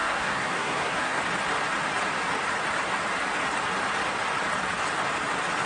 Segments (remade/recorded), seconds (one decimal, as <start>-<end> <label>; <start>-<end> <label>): 0.0-1.2 remade; 1.2-5.7 recorded